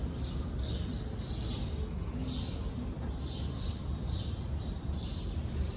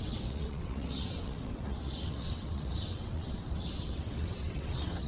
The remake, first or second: second